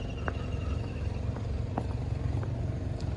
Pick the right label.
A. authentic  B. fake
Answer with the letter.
A